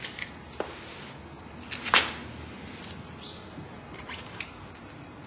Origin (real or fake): real